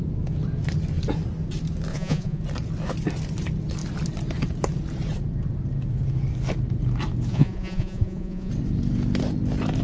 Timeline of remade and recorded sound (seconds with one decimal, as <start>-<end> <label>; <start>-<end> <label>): 0.0-1.9 recorded; 1.9-2.4 remade; 2.4-7.3 recorded; 7.3-8.5 remade; 8.5-9.8 recorded